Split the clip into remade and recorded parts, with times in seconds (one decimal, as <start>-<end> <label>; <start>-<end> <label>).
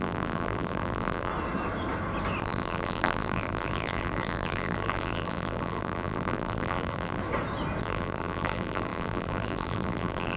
0.0-1.3 remade; 1.3-2.4 recorded; 2.4-7.2 remade; 7.2-7.8 recorded; 7.8-10.4 remade